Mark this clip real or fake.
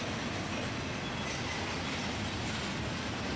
real